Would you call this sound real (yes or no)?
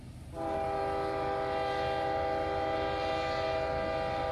yes